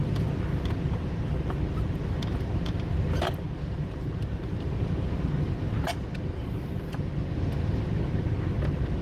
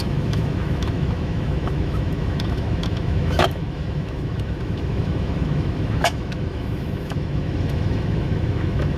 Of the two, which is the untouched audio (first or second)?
first